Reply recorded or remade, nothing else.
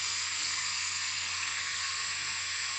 remade